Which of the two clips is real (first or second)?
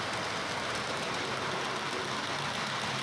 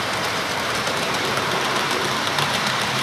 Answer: first